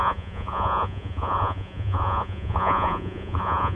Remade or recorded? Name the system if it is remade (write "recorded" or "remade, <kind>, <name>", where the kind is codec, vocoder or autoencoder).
remade, vocoder, Vocos